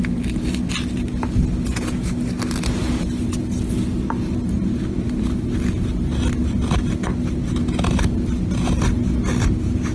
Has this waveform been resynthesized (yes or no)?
no